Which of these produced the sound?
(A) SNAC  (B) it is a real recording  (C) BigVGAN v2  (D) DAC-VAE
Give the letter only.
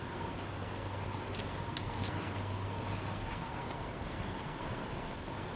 A